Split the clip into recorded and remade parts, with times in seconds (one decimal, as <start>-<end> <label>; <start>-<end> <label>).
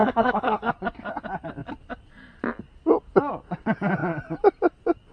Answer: 0.0-0.7 remade; 0.7-5.1 recorded